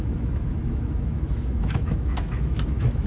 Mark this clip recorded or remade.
remade